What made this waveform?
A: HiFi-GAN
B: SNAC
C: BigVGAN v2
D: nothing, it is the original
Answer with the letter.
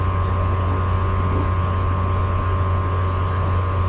D